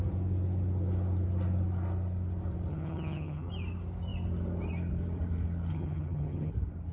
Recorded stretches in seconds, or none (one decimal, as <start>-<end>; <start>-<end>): 0.0-2.7; 3.5-5.7; 6.5-6.9